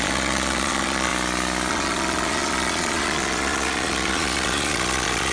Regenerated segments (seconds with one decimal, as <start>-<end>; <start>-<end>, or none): 0.0-1.1; 1.7-5.3